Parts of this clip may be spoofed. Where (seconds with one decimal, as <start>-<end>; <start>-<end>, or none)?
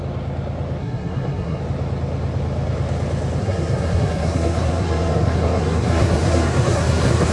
0.8-1.6; 3.4-7.3